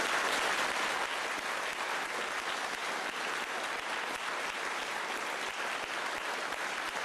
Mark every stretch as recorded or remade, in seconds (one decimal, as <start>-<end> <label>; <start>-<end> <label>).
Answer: 0.0-7.0 recorded